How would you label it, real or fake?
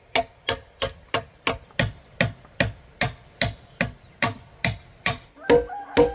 real